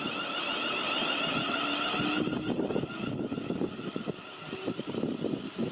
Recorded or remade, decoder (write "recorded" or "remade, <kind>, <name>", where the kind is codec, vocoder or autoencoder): recorded